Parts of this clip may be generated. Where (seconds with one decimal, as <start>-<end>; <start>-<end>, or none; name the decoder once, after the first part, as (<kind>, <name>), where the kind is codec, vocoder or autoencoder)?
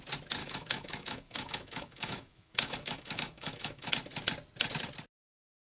0.4-3.9 (autoencoder, DAC-VAE)